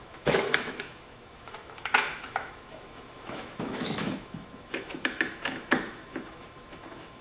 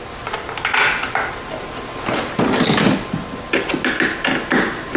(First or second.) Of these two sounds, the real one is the second